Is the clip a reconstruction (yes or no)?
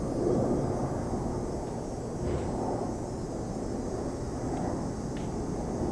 no